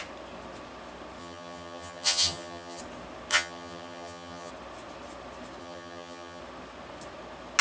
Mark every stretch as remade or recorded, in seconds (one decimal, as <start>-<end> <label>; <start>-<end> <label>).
0.0-1.2 recorded; 1.2-2.8 remade; 2.8-3.3 recorded; 3.3-4.5 remade; 4.5-5.6 recorded; 5.6-6.4 remade; 6.4-7.6 recorded